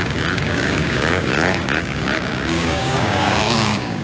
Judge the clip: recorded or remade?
remade